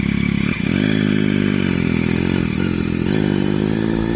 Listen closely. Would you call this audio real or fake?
real